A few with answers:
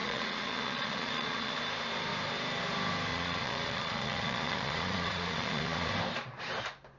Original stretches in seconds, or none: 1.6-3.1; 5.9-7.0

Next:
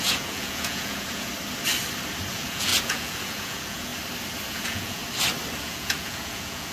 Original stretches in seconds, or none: 1.3-2.3; 3.9-4.5; 5.0-5.6

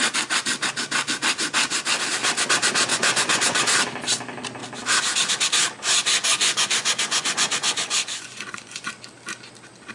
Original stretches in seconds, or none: 0.0-2.9; 3.7-6.3; 8.9-9.9

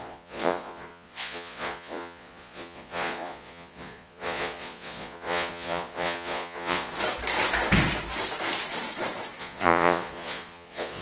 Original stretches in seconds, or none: 6.9-9.4

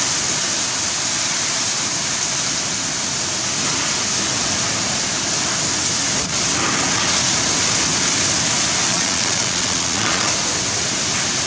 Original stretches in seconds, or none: 0.0-8.9; 10.3-11.5

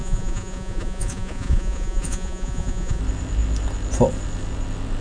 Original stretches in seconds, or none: 3.0-5.0

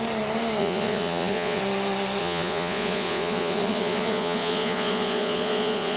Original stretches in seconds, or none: 0.0-0.6; 1.6-2.2

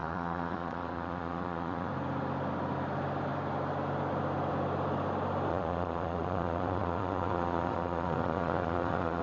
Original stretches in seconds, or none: 1.9-5.5